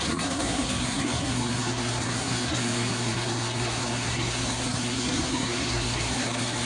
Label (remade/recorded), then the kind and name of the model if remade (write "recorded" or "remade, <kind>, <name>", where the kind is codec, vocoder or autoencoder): remade, codec, SNAC